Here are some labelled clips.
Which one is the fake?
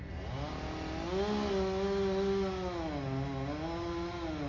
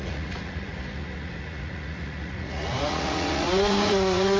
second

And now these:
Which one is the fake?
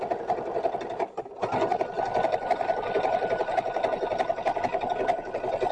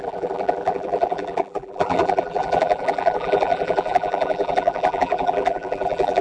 second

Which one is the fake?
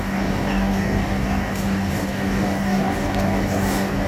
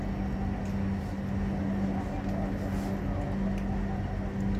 first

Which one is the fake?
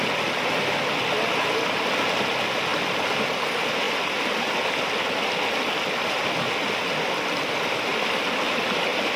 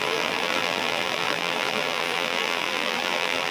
second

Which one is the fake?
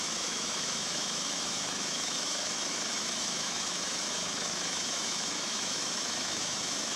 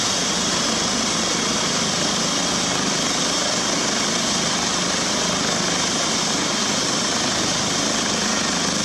first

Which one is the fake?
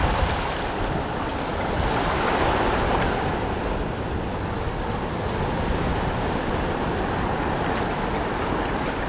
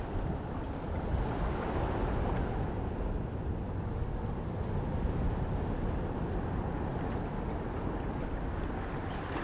first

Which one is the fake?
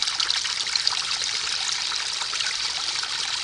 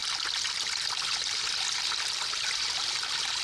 first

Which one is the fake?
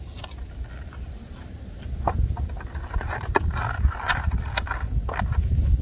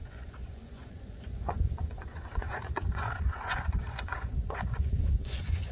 second